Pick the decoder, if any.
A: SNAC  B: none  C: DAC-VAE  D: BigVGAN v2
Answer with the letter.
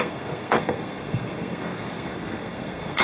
A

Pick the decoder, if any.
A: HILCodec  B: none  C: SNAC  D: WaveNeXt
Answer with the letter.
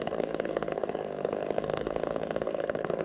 C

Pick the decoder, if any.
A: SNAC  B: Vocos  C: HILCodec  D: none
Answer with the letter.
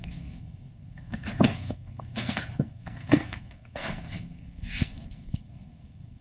A